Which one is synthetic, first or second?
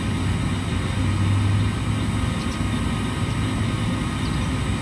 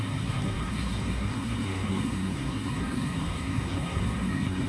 second